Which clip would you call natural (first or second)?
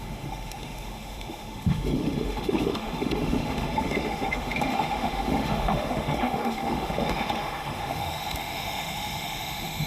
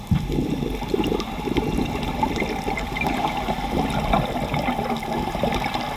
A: second